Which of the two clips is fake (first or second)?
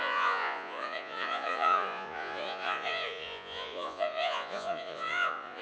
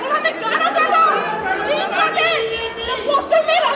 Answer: first